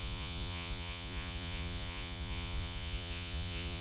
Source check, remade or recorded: remade